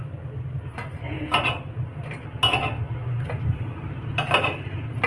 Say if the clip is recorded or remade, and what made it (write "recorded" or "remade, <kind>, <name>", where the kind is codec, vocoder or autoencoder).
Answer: recorded